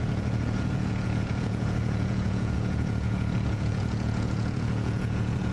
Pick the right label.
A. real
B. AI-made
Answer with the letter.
B